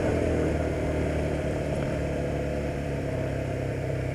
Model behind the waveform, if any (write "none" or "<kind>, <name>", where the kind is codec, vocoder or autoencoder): vocoder, BigVGAN v2